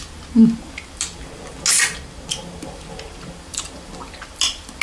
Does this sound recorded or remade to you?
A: recorded